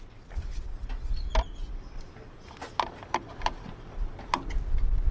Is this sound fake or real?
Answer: real